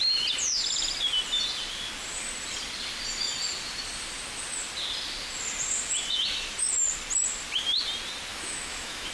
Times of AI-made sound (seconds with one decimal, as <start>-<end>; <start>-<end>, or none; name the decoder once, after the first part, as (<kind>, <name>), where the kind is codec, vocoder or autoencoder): 8.3-9.1 (autoencoder, DAC-VAE)